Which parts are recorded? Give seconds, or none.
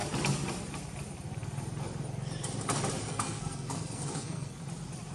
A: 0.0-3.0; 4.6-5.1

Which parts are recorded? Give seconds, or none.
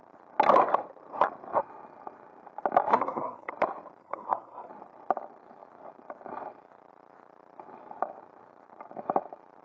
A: 0.0-2.9; 3.5-4.0; 4.7-9.6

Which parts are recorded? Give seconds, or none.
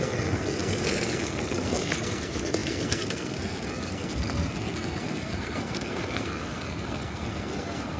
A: none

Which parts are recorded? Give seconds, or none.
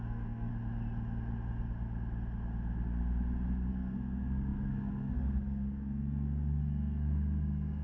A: 0.5-3.7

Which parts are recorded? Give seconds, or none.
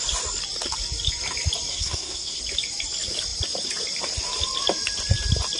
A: 0.0-1.7; 2.4-5.6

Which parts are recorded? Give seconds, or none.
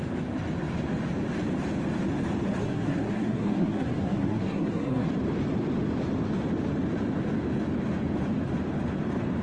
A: 0.0-2.6; 5.1-9.4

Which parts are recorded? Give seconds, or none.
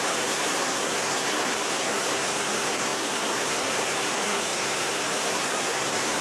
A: none